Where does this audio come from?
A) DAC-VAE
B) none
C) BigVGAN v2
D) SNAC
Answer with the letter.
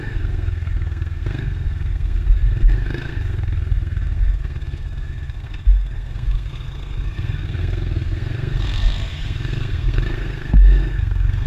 D